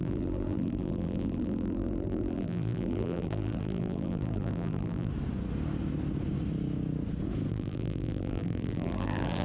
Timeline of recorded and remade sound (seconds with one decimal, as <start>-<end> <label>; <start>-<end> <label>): 0.0-5.1 remade; 5.1-7.5 recorded; 7.5-9.4 remade